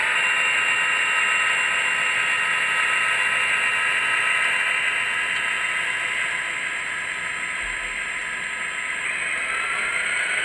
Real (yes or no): yes